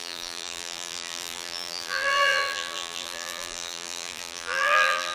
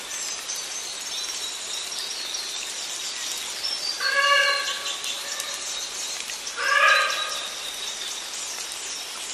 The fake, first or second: first